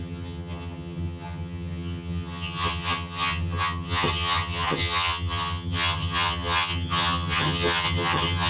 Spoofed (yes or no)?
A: yes